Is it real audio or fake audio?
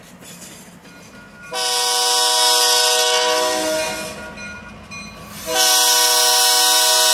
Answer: real